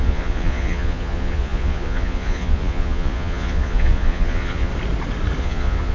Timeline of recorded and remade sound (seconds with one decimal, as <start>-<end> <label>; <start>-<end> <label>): 0.0-4.7 remade; 4.7-5.4 recorded; 5.4-5.9 remade